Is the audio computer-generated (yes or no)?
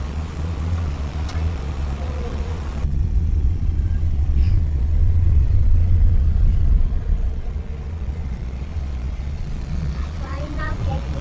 yes